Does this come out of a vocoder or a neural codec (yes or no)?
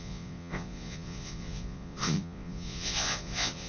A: yes